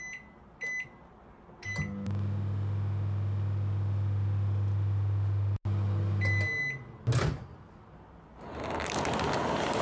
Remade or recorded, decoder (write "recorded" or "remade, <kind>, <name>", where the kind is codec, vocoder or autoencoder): recorded